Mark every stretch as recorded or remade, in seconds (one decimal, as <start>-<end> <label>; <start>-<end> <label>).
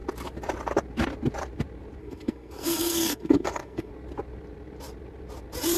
0.0-2.0 recorded; 2.0-3.9 remade; 3.9-5.8 recorded